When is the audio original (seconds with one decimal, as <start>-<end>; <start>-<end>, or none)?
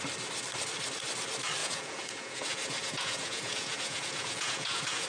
0.0-1.6